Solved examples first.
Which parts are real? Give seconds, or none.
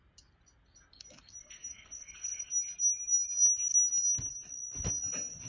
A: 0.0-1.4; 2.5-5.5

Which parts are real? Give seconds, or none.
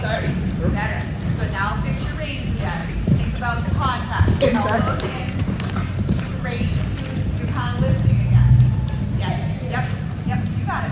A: 0.0-2.8; 7.0-10.9